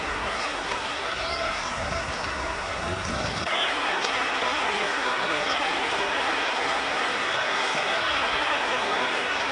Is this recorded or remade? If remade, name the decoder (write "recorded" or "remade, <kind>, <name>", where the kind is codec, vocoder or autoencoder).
remade, codec, SNAC